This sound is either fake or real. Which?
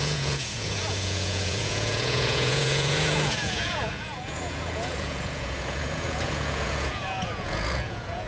fake